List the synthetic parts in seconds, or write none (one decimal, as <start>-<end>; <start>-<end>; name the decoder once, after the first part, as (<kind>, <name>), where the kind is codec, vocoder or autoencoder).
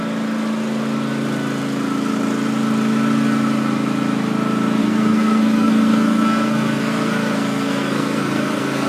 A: 4.8-8.9 (codec, SNAC)